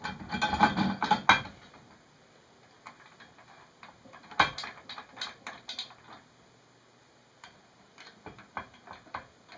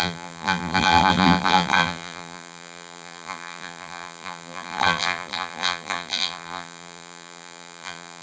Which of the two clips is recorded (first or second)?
first